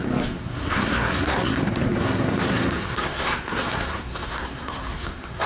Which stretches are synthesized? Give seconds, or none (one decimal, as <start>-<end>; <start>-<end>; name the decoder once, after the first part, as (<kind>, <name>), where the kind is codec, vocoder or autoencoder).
0.0-5.5 (codec, SNAC)